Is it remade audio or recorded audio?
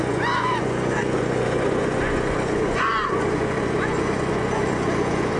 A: remade